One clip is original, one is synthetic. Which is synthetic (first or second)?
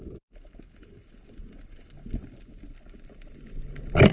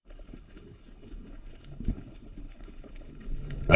second